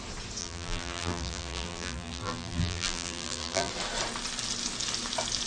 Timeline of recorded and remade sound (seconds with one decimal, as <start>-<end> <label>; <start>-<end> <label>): 0.0-0.4 recorded; 0.4-3.7 remade; 3.7-5.5 recorded